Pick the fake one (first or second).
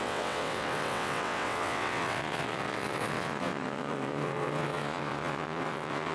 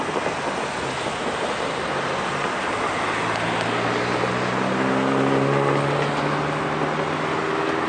first